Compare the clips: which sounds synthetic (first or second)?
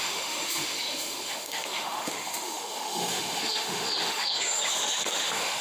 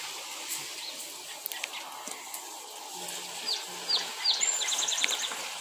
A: first